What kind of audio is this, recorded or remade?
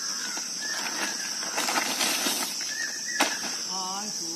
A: recorded